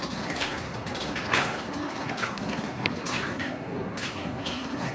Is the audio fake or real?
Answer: fake